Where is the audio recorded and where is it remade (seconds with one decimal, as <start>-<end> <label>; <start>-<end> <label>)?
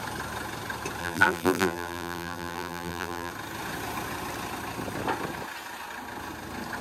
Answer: 0.0-1.0 recorded; 1.0-3.3 remade; 3.3-6.8 recorded